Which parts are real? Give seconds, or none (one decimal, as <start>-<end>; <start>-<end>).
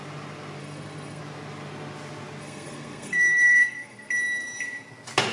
0.0-0.6; 1.2-2.4; 4.1-5.3